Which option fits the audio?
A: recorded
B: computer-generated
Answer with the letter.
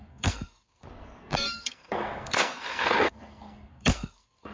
B